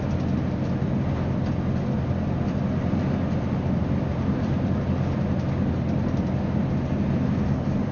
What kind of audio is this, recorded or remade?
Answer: recorded